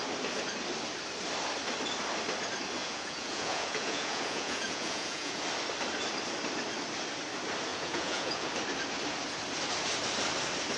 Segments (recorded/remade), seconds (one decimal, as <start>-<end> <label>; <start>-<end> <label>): 0.0-2.8 recorded; 2.8-5.4 remade; 5.4-7.7 recorded; 7.7-8.5 remade; 8.5-10.8 recorded